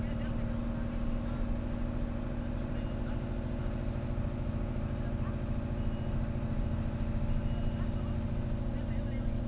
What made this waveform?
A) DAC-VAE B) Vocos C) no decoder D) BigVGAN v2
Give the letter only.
C